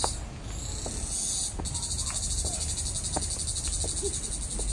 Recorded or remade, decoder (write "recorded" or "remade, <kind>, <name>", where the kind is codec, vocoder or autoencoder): recorded